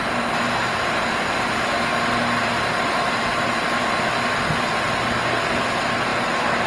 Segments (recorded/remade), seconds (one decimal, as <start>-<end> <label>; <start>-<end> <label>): 0.0-1.9 recorded; 1.9-3.2 remade; 3.2-6.7 recorded